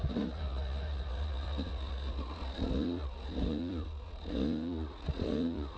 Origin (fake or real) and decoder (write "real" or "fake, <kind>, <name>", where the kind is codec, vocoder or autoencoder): fake, vocoder, Vocos